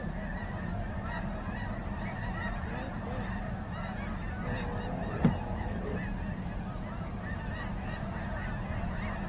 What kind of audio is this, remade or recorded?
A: recorded